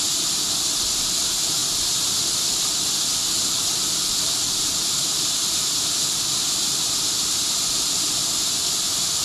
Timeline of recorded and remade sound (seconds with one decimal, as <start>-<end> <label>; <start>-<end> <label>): 0.0-1.6 remade; 1.6-5.6 recorded; 5.6-9.2 remade